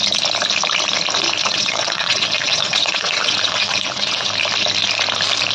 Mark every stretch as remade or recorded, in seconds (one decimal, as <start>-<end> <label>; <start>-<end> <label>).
0.0-1.4 recorded; 1.4-4.3 remade; 4.3-5.5 recorded